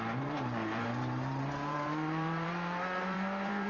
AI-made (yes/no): yes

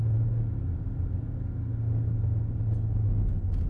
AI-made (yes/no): no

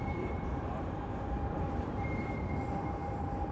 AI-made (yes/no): yes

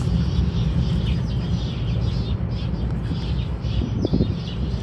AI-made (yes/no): no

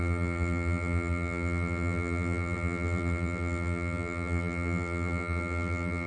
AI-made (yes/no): yes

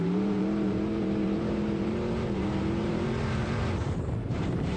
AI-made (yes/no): yes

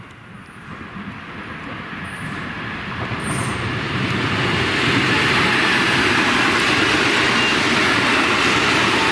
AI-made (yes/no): no